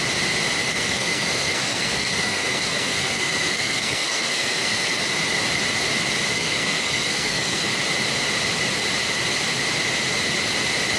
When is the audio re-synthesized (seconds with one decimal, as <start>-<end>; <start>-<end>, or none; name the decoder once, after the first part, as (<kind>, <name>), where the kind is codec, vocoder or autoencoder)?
0.6-5.0 (codec, SNAC); 6.3-7.7